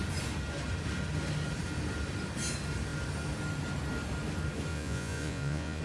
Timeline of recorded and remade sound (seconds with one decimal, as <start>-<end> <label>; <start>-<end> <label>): 0.0-4.7 recorded; 4.7-5.8 remade